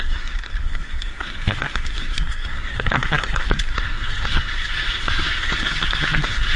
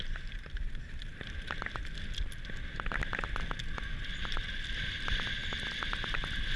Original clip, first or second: second